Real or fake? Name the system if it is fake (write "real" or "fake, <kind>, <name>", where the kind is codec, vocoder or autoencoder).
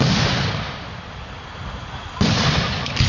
real